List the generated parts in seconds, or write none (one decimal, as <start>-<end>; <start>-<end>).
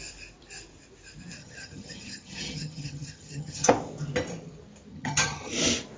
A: 1.4-3.7; 4.9-5.5